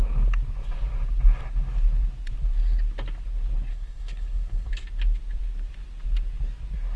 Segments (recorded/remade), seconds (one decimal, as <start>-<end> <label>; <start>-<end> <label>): 0.0-3.7 recorded; 3.7-4.7 remade; 4.7-7.0 recorded

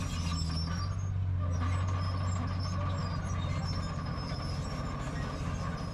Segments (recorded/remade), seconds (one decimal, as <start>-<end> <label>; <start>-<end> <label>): 0.0-5.9 recorded